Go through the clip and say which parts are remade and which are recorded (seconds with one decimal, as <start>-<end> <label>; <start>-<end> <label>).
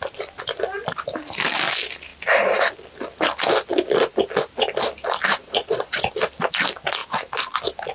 0.0-5.4 recorded; 5.4-6.1 remade; 6.1-7.9 recorded